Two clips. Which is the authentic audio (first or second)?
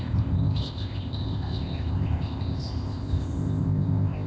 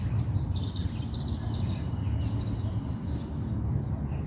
second